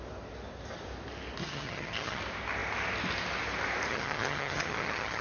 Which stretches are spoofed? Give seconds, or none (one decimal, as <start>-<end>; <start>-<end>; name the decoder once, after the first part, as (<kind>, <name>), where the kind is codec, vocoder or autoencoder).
1.4-2.2 (vocoder, HiFi-GAN); 3.9-5.2